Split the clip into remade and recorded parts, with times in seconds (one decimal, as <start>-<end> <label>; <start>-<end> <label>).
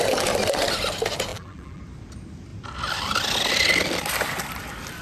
0.0-1.3 recorded; 1.3-1.8 remade; 1.8-5.0 recorded